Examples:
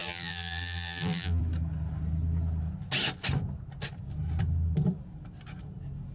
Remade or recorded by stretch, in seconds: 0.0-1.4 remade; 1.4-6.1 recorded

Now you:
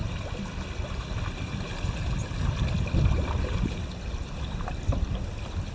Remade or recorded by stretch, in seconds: 0.0-5.7 recorded